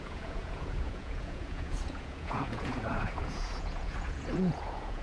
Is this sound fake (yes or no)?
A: yes